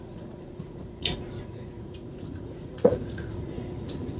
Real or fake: fake